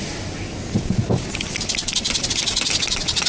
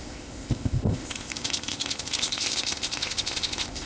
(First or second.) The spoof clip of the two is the second